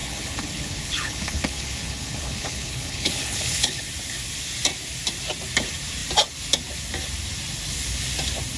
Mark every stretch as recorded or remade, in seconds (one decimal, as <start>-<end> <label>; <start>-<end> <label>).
0.0-3.8 remade; 3.8-8.6 recorded